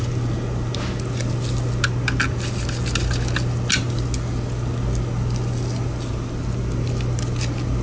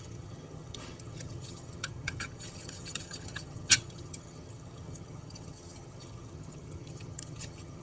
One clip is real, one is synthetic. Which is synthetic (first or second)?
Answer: second